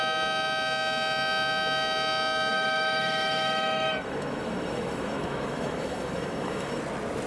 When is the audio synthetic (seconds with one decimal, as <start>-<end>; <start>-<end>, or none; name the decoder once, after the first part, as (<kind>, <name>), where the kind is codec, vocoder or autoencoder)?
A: 2.5-6.8 (autoencoder, DAC-VAE)